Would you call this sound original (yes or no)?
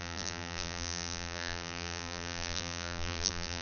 no